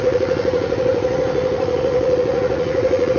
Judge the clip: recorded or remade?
remade